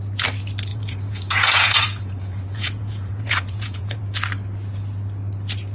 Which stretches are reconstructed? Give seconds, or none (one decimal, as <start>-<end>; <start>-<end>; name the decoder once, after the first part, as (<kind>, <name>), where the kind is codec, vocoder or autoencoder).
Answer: 0.7-4.0 (vocoder, Vocos)